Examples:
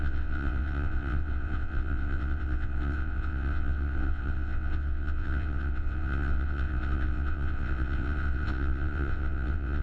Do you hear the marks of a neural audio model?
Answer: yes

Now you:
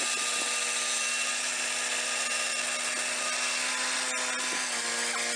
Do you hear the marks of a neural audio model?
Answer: no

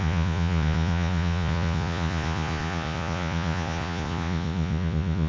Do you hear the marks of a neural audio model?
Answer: yes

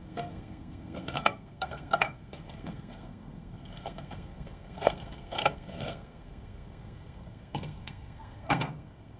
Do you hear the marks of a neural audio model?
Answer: yes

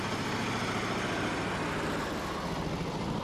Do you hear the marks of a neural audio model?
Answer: no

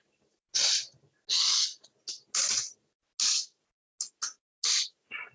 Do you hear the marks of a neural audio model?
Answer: no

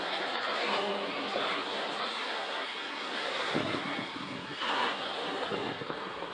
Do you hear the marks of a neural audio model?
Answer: yes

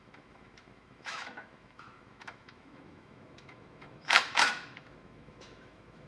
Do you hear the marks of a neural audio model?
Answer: yes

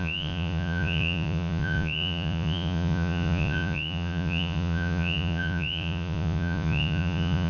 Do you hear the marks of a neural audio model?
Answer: yes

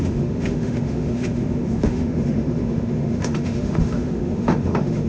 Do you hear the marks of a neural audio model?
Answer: yes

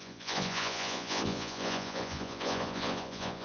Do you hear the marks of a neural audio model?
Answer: yes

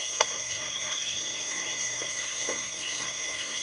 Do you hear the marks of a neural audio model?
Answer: yes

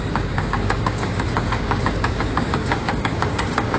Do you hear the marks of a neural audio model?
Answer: yes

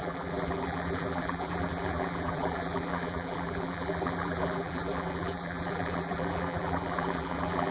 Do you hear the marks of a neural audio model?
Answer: yes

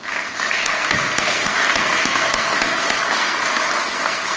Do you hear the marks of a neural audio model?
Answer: yes